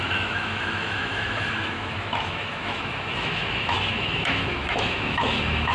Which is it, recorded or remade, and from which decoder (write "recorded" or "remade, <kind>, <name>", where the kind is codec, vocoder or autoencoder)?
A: remade, autoencoder, DAC-VAE